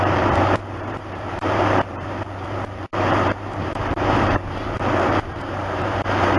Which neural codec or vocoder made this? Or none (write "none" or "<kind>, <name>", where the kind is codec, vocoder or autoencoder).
vocoder, BigVGAN v2